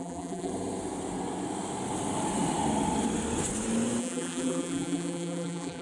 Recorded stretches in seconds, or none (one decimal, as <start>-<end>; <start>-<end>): 0.5-4.0